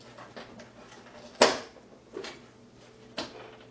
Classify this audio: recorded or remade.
recorded